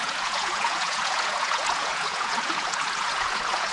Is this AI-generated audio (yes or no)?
yes